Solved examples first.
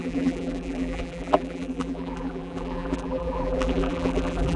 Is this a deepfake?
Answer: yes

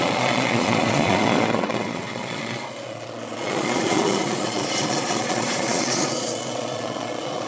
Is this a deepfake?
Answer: yes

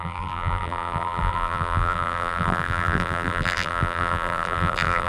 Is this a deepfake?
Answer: yes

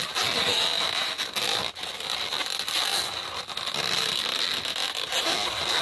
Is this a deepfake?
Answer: no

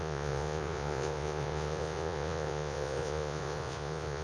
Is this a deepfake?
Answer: yes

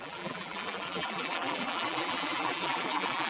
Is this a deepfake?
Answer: yes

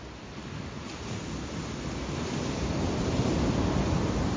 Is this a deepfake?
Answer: no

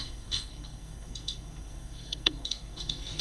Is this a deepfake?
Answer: yes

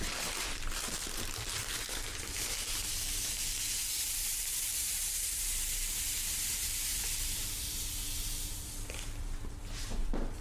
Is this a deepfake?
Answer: yes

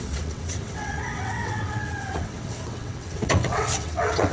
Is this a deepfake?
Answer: yes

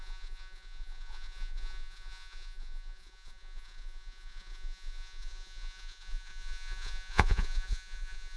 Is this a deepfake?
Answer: yes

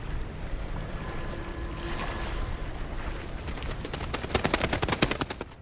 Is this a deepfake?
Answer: no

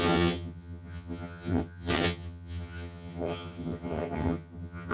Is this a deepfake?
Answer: yes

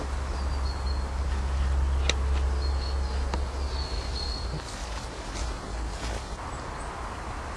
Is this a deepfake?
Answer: no